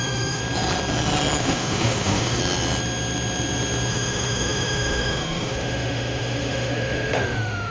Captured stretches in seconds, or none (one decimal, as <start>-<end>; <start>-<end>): 0.4-1.4; 2.4-3.9